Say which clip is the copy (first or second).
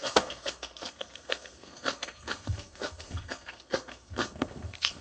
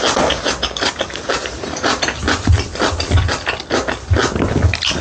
first